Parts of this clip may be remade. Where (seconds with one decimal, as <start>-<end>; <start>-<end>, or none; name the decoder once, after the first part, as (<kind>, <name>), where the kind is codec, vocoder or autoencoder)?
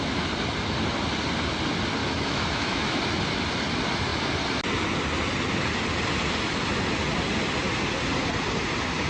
2.0-3.0 (autoencoder, DAC-VAE)